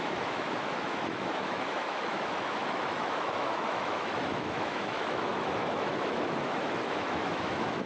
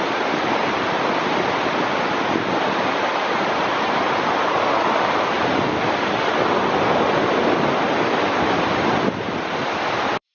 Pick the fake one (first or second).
first